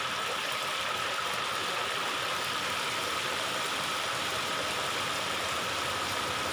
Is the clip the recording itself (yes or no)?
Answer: no